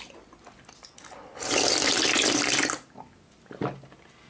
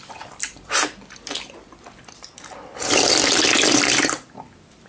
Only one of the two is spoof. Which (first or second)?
second